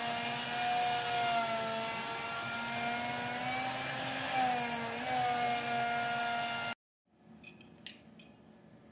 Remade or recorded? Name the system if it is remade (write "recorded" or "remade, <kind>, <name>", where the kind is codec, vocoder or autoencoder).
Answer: recorded